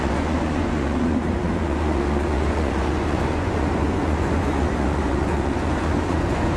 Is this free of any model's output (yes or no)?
no